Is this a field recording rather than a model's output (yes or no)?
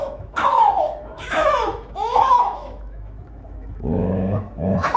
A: no